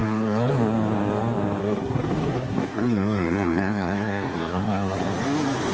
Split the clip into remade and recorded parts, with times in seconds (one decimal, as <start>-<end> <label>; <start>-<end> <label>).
0.0-0.5 remade; 0.5-1.6 recorded; 1.6-5.0 remade; 5.0-5.7 recorded